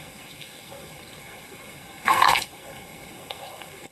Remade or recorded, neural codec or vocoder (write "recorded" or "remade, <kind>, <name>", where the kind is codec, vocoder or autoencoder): remade, codec, SNAC